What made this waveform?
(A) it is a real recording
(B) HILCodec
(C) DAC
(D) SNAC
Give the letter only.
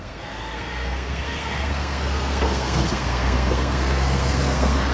D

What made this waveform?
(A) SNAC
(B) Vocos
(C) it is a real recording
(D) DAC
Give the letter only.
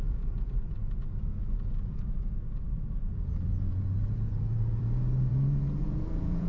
B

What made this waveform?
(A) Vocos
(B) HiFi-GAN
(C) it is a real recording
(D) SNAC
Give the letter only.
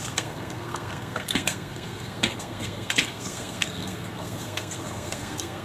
D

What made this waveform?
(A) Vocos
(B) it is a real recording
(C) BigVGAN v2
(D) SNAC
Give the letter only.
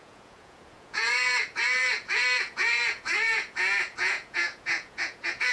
A